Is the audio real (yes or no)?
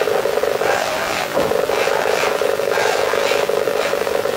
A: no